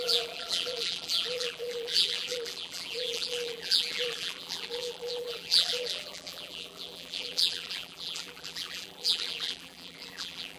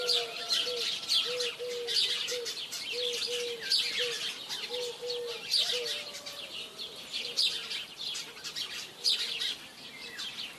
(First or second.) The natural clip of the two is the second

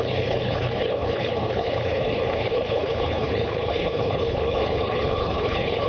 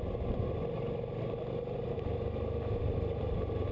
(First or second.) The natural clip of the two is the second